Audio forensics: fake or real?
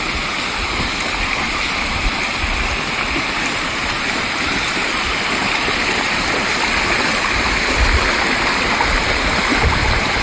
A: real